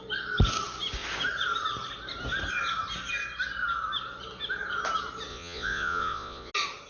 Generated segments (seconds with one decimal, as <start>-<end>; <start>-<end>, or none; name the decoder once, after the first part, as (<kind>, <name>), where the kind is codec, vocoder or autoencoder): 5.3-6.5 (vocoder, Vocos)